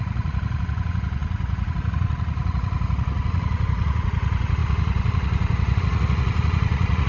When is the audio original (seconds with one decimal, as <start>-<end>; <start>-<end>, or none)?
none